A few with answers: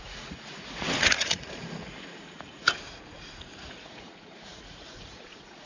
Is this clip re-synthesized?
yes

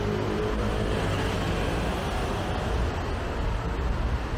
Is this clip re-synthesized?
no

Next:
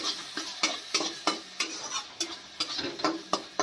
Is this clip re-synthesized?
no